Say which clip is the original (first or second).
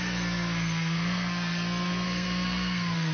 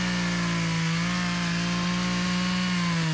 second